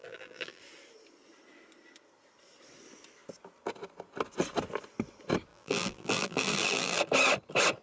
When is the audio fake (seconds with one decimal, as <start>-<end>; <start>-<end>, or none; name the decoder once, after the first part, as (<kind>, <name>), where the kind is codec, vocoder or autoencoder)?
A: 0.0-0.6 (vocoder, BigVGAN v2); 5.5-7.0